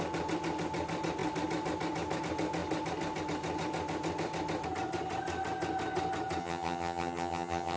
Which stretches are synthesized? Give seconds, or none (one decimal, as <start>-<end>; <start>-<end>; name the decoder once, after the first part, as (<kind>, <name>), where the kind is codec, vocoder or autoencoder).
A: 6.4-7.8 (vocoder, HiFi-GAN)